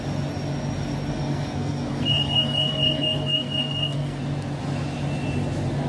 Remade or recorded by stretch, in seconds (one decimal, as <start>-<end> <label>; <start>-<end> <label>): 0.0-1.1 recorded; 1.1-4.2 remade; 4.2-5.9 recorded